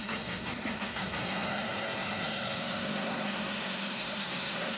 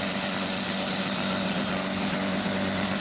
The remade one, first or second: first